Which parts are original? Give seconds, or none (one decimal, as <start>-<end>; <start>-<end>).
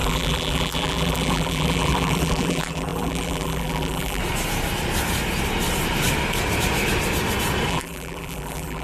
4.2-7.7